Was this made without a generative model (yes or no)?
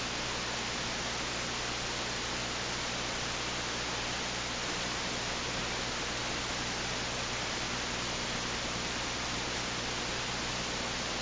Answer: yes